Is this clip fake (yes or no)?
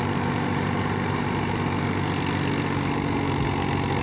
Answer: no